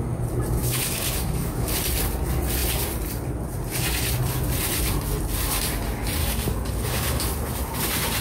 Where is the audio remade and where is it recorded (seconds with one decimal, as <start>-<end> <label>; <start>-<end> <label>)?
0.0-0.6 recorded; 0.6-1.7 remade; 1.7-6.2 recorded; 6.2-7.2 remade; 7.2-8.2 recorded